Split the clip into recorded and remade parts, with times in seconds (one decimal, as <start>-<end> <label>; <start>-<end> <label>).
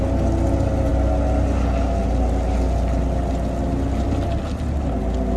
0.0-5.4 recorded